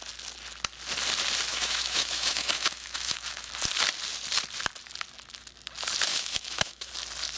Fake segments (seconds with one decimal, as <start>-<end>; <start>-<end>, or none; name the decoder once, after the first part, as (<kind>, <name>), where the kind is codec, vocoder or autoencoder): 1.5-3.5 (autoencoder, DAC-VAE); 6.1-6.9